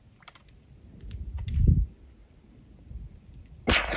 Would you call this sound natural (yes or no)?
yes